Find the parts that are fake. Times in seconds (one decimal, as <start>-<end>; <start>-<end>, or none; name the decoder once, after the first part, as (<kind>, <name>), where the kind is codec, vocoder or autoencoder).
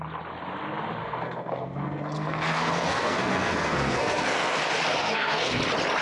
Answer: 1.0-4.6 (codec, SNAC); 5.0-5.6